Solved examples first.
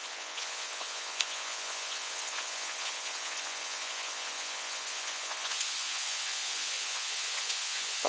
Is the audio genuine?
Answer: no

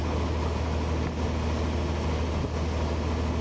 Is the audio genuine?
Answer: yes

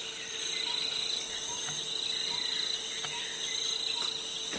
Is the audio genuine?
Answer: yes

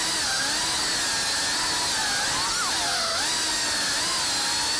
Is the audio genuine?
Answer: yes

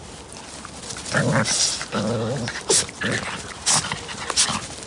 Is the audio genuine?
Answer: yes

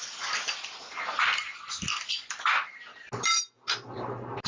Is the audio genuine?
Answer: yes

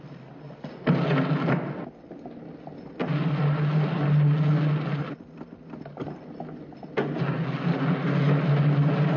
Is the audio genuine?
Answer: yes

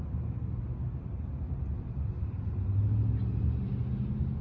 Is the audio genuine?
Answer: yes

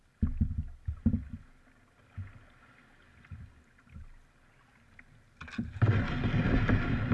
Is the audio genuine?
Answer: yes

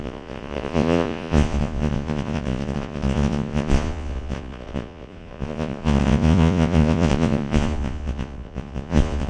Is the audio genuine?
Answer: no